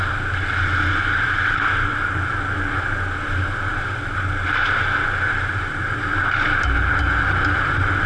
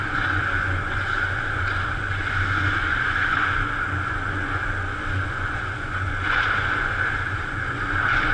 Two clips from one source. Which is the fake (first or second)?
second